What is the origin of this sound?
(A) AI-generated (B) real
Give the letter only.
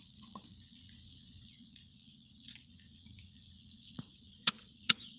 A